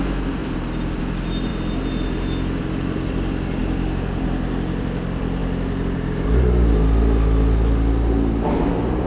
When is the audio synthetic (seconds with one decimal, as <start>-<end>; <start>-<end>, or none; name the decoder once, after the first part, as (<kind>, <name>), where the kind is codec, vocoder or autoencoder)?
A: none

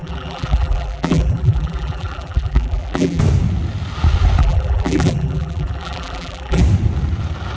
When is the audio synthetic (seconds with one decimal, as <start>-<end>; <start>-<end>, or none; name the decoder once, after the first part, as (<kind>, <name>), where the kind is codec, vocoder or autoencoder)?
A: 0.0-3.2 (vocoder, BigVGAN v2); 4.4-6.6

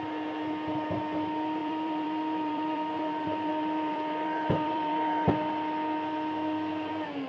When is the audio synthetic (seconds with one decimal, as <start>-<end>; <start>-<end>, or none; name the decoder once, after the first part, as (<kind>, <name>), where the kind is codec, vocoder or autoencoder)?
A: 1.6-5.3 (vocoder, BigVGAN v2)

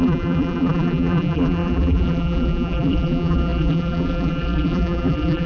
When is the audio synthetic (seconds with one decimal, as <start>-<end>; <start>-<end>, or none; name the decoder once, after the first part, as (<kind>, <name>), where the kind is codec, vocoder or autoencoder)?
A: 0.0-5.5 (vocoder, BigVGAN v2)

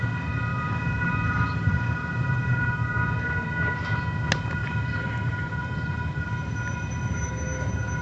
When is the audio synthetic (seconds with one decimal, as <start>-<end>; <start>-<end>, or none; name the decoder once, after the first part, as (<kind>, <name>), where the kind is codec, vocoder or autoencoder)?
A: 0.5-2.6 (vocoder, BigVGAN v2); 4.6-7.3

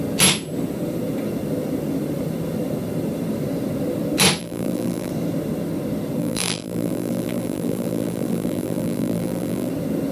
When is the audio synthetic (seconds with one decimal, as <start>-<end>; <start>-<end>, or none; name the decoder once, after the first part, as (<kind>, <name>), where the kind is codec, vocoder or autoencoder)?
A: 4.4-5.1 (vocoder, BigVGAN v2); 6.2-9.7

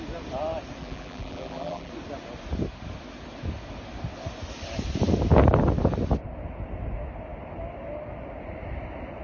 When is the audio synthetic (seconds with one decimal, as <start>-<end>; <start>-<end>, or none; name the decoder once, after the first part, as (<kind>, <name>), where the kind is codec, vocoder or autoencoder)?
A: 0.8-1.9 (vocoder, BigVGAN v2)

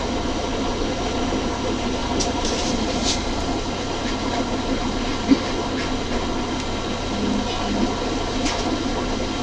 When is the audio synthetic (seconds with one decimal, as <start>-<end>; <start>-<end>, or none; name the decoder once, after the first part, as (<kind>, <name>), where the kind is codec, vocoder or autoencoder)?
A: 2.0-3.1 (vocoder, BigVGAN v2)